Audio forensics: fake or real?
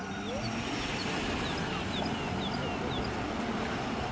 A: real